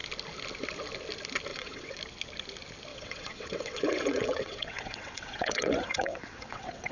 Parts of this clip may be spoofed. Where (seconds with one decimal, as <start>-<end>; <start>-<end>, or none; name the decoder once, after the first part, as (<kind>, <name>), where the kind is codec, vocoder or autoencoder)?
1.5-2.0 (vocoder, WaveNeXt); 2.9-6.9

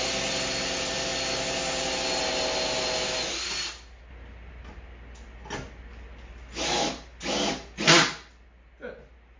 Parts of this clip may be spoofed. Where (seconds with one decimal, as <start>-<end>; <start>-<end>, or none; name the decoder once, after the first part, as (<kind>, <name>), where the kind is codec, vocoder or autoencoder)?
none

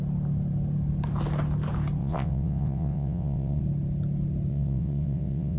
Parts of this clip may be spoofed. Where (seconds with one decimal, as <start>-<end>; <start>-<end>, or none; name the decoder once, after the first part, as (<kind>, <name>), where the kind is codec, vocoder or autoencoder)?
2.0-3.6 (vocoder, WaveNeXt); 4.5-5.6